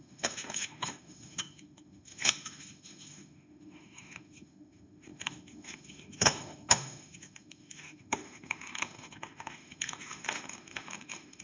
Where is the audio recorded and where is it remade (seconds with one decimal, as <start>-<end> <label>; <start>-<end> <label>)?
0.0-11.4 remade